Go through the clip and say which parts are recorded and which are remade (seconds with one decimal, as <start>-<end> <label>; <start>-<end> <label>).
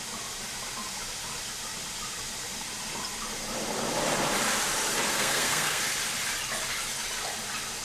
0.0-5.1 recorded; 5.1-5.8 remade; 5.8-7.8 recorded